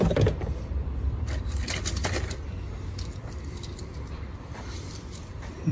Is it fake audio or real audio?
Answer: fake